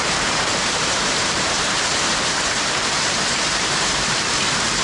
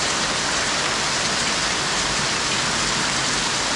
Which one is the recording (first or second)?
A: second